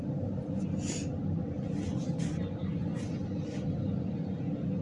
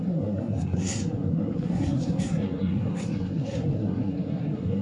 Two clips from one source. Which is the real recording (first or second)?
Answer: first